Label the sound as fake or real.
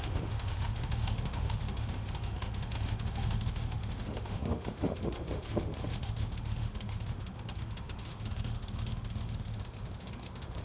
fake